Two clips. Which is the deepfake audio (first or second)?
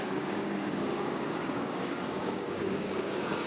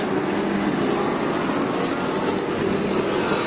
first